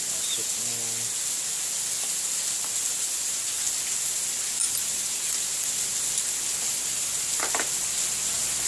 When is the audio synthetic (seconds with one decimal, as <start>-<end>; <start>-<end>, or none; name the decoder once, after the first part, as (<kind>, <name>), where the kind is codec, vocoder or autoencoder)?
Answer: none